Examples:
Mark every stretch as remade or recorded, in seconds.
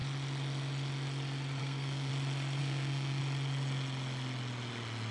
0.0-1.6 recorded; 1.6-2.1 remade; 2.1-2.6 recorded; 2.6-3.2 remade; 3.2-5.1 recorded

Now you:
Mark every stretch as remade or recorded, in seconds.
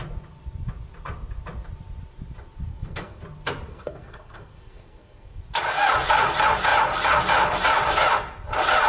0.0-2.7 recorded; 2.7-3.2 remade; 3.2-3.7 recorded; 3.7-5.4 remade; 5.4-8.9 recorded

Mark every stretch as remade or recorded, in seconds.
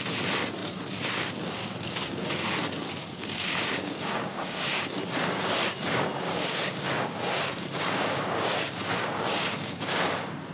0.0-1.6 recorded; 1.6-2.3 remade; 2.3-3.0 recorded; 3.0-4.6 remade; 4.6-6.3 recorded; 6.3-10.0 remade; 10.0-10.5 recorded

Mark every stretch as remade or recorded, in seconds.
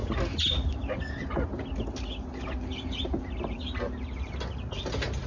0.0-5.3 recorded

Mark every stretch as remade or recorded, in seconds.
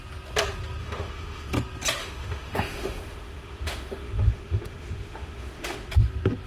0.0-0.8 recorded; 0.8-1.5 remade; 1.5-2.0 recorded; 2.0-5.9 remade; 5.9-6.5 recorded